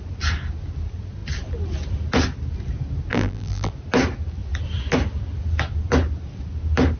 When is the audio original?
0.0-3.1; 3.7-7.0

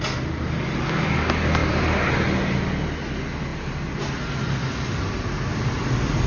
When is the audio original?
0.0-1.6; 2.2-5.5